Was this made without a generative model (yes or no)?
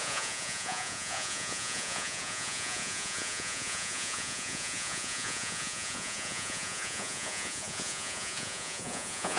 no